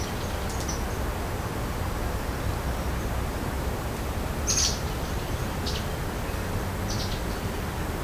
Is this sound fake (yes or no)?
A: no